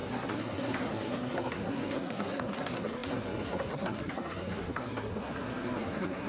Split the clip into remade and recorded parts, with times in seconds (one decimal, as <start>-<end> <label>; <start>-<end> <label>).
0.0-6.3 remade